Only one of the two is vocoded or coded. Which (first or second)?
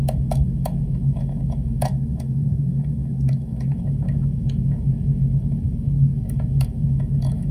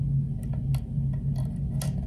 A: first